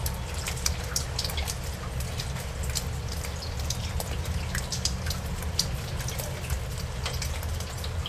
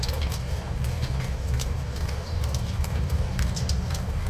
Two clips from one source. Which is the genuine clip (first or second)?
first